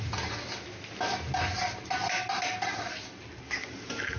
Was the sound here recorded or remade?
recorded